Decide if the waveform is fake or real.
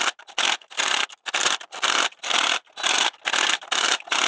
real